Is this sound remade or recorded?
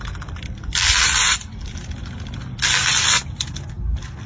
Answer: recorded